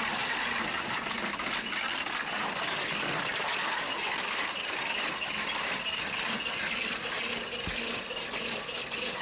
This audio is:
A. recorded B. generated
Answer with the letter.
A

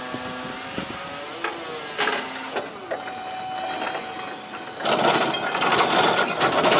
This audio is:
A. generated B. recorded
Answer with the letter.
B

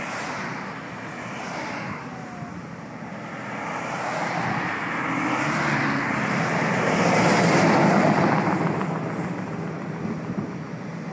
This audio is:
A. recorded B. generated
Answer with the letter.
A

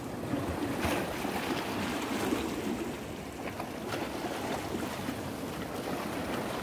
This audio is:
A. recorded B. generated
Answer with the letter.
A